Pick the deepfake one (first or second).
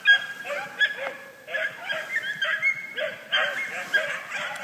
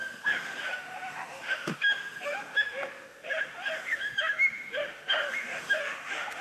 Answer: second